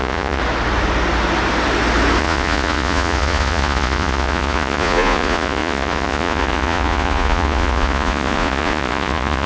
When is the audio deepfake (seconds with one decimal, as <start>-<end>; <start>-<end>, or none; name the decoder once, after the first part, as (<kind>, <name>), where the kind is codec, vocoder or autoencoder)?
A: 0.0-0.4 (vocoder, Vocos); 2.2-9.5